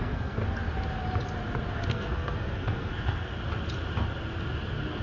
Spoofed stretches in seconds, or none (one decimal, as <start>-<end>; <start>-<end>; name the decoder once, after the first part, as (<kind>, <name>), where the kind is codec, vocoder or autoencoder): 0.0-0.4 (codec, SNAC); 1.9-3.3